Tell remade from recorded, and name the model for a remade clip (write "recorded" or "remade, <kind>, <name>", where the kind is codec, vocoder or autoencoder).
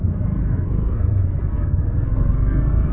remade, codec, SNAC